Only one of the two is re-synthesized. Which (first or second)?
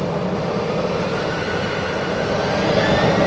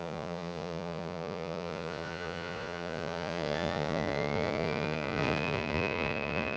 second